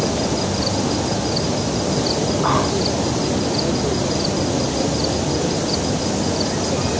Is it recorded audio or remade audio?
recorded